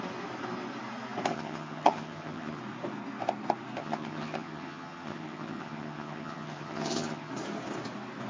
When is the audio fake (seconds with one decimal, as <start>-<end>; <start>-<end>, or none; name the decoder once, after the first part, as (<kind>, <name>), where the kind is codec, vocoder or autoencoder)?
1.3-2.6 (vocoder, HiFi-GAN); 3.8-7.3